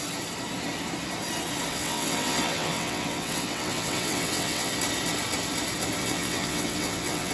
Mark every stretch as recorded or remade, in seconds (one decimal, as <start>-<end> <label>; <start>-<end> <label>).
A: 0.0-1.7 recorded; 1.7-4.7 remade; 4.7-6.0 recorded; 6.0-7.3 remade